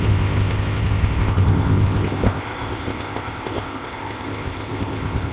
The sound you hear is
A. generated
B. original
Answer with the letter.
A